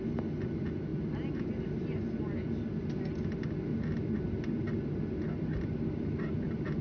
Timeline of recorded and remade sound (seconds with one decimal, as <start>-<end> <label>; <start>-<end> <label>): 0.0-6.8 recorded